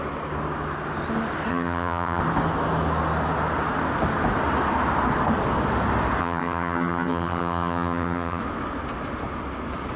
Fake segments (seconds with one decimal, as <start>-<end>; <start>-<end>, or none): 1.5-2.2; 6.2-8.4